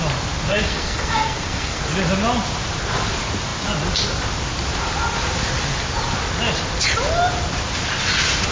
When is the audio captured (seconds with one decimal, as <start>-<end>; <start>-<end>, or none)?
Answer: 0.0-0.5; 1.8-8.5